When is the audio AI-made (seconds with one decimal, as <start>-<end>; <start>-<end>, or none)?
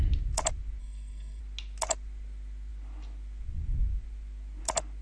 0.8-1.4